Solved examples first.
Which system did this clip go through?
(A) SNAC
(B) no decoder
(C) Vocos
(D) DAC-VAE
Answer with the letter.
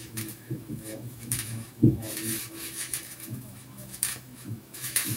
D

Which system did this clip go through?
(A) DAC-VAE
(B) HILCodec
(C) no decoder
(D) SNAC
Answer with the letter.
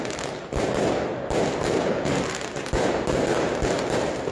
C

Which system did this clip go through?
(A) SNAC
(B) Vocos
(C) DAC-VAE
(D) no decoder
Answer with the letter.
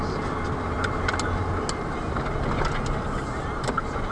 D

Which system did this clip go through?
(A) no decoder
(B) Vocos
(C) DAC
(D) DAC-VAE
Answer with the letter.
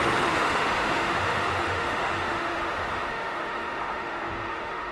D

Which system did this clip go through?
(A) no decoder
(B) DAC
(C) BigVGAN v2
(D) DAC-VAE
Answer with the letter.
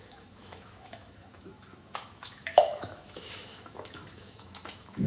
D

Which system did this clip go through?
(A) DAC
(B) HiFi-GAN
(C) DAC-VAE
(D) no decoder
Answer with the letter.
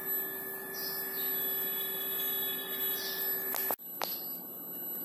D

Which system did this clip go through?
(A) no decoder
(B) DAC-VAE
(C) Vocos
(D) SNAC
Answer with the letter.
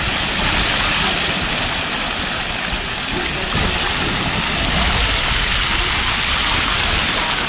A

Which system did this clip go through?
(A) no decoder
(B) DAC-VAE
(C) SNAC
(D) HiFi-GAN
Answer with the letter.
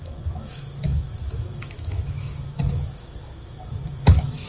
B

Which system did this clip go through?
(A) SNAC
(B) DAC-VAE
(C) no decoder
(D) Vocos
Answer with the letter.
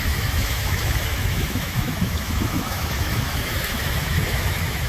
B